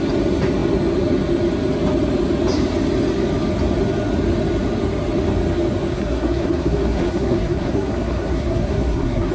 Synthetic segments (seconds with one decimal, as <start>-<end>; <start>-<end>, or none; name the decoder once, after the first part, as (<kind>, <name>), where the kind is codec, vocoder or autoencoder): 5.9-9.3 (codec, SNAC)